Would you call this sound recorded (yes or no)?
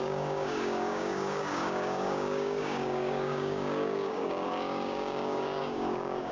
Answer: no